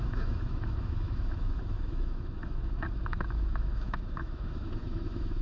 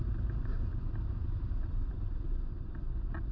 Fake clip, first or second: first